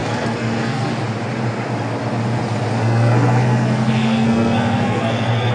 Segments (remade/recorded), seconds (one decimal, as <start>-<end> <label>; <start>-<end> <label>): 0.0-0.9 remade; 0.9-2.8 recorded; 2.8-5.5 remade